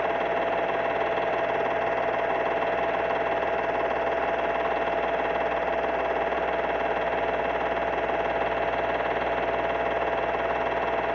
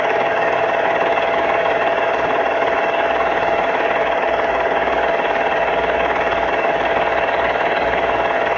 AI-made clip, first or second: second